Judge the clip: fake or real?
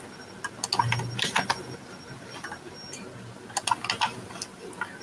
real